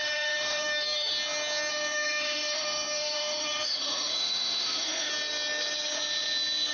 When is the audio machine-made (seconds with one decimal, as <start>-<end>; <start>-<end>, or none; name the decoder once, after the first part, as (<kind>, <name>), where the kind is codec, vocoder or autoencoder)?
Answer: 0.0-1.1 (autoencoder, DAC-VAE); 1.7-5.1